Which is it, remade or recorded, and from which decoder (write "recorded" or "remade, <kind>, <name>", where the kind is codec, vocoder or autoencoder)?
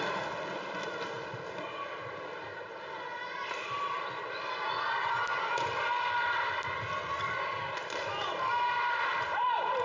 recorded